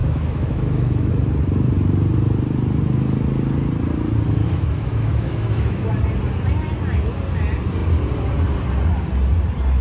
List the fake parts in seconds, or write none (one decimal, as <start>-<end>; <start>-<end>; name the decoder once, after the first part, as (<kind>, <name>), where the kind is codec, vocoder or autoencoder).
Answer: 0.0-1.1 (autoencoder, DAC-VAE); 4.4-5.9